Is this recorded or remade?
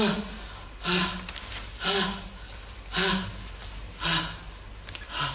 recorded